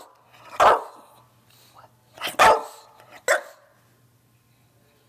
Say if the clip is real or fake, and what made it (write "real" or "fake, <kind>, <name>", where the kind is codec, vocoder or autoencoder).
real